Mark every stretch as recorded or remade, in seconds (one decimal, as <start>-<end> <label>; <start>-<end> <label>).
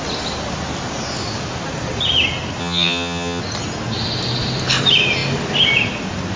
0.0-2.6 recorded; 2.6-3.4 remade; 3.4-6.4 recorded